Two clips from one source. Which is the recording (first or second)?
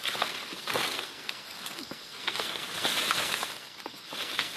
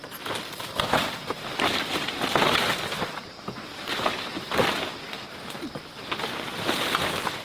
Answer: second